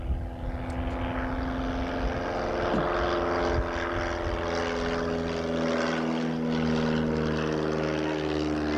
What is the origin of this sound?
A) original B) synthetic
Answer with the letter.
A